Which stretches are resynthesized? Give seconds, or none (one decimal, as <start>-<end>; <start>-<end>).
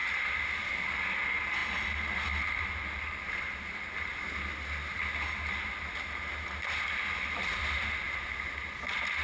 none